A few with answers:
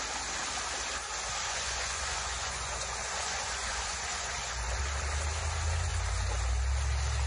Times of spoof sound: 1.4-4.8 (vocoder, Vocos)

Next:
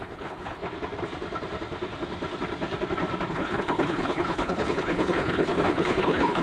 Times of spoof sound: 0.0-0.6 (codec, HILCodec); 3.3-6.4

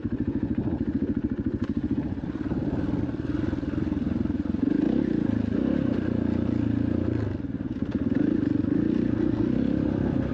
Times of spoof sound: 0.0-2.2 (vocoder, Vocos)

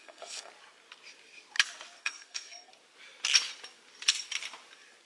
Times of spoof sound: 0.0-0.5 (codec, SNAC); 2.0-2.7

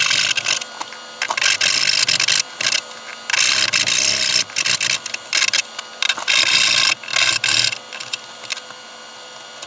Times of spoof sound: none

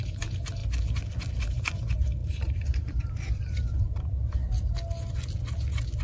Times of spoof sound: 0.0-0.6 (vocoder, BigVGAN v2); 1.4-4.4

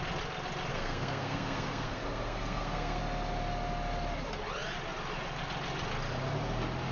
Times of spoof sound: 0.7-3.0 (codec, SNAC)